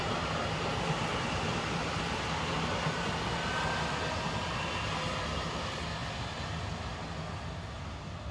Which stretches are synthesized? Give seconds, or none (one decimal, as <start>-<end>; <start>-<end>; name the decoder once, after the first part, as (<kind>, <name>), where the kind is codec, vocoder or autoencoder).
none